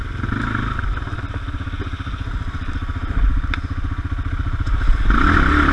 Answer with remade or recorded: recorded